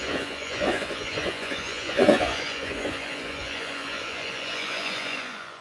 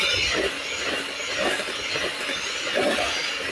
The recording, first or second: second